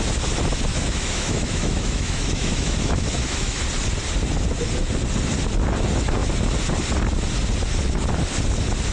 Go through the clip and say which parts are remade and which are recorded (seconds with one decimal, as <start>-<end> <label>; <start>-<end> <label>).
0.0-0.7 recorded; 0.7-3.6 remade; 3.6-8.9 recorded